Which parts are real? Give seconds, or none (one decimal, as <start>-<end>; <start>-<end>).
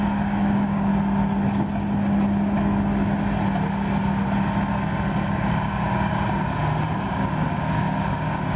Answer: 0.9-5.3; 6.1-7.0